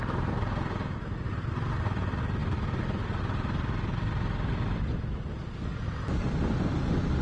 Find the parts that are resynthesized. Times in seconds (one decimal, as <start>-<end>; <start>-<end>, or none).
0.0-1.5